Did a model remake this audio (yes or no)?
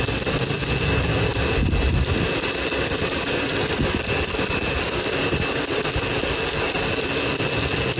no